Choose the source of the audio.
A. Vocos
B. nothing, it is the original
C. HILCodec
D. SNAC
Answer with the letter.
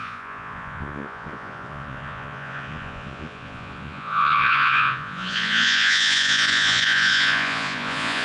A